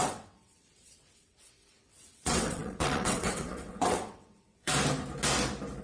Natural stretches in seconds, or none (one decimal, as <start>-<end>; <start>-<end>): 4.7-5.8